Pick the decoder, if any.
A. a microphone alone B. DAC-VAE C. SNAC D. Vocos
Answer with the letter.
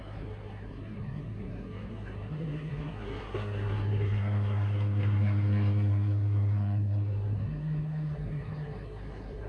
C